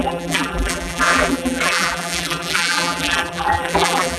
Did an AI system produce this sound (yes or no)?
yes